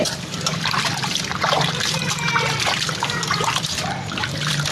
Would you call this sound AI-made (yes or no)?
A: yes